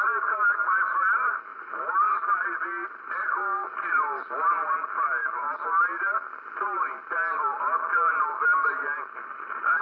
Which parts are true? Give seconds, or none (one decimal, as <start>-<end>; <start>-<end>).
0.0-1.5; 4.3-9.8